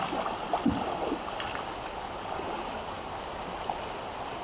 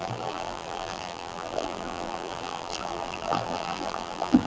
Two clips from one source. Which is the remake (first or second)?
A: second